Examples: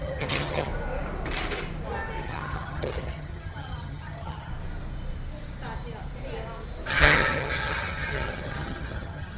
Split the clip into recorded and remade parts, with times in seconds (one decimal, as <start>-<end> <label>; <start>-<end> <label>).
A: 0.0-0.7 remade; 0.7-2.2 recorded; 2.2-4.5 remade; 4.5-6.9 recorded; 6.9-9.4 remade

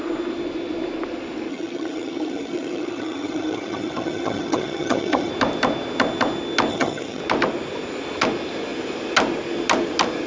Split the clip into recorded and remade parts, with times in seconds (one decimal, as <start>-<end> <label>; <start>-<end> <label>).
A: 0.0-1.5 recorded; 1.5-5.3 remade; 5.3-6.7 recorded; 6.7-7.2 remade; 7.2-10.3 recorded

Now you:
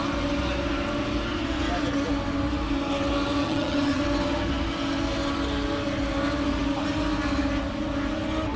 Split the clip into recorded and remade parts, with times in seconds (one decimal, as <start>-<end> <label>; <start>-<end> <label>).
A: 0.0-3.4 recorded; 3.4-4.0 remade; 4.0-8.6 recorded

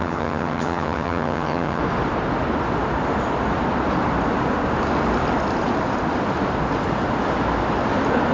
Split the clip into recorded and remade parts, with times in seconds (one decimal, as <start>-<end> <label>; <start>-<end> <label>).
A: 0.0-1.8 remade; 1.8-8.3 recorded

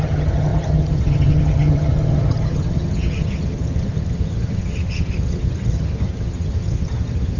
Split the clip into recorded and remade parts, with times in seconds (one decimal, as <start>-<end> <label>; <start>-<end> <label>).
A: 0.0-7.4 remade

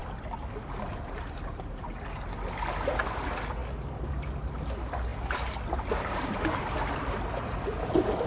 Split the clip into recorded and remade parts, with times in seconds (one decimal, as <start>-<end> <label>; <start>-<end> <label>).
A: 0.0-8.3 recorded